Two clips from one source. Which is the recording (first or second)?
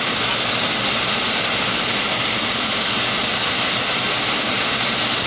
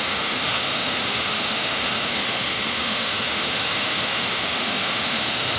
first